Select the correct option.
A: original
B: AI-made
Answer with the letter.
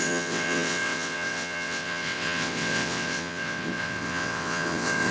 B